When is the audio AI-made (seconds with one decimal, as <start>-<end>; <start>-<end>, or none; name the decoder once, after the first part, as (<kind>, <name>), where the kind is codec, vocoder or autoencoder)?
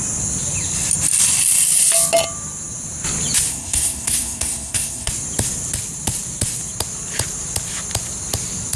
3.5-5.1 (codec, SNAC)